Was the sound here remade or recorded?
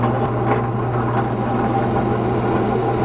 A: recorded